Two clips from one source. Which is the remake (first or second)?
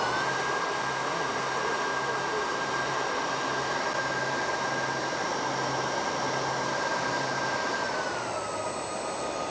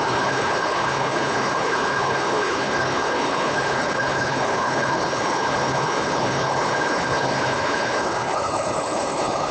second